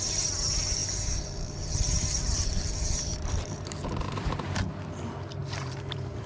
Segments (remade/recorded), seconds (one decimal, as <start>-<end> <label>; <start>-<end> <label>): 0.0-0.8 recorded; 0.8-4.6 remade; 4.6-5.4 recorded; 5.4-6.3 remade